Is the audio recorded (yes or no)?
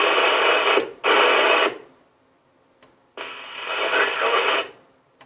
yes